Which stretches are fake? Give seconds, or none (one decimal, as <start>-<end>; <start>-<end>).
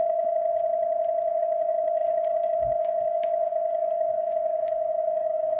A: 0.0-0.5; 1.4-5.6